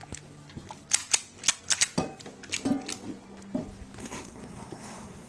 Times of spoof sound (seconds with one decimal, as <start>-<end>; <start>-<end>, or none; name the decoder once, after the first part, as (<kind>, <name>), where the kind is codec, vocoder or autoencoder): 4.0-5.3 (codec, SNAC)